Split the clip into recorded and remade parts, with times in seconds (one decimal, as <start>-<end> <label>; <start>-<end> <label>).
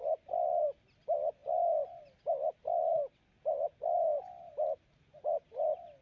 0.0-6.0 recorded